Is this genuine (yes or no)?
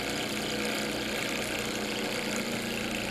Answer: yes